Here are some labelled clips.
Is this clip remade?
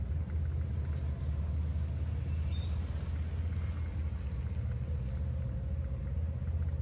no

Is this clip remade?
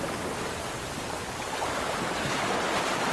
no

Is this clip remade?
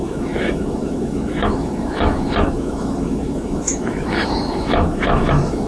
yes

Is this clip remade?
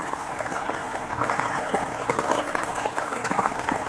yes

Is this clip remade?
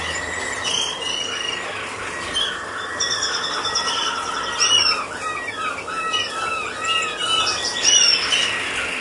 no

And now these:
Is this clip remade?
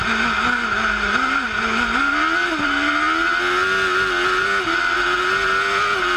no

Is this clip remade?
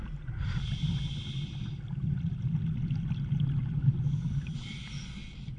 no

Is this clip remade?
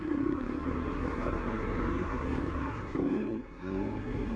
yes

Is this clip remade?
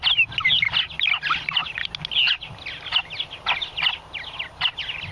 no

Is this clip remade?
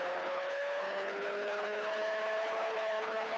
yes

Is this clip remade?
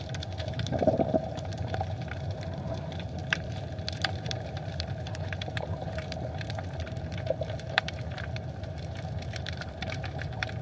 yes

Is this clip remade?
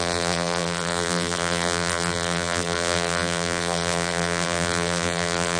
yes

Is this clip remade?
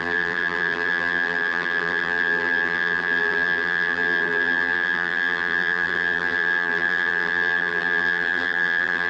yes